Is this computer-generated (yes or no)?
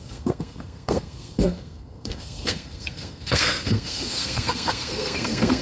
yes